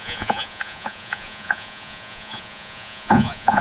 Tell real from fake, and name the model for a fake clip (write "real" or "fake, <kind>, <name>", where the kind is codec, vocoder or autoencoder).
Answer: fake, vocoder, Vocos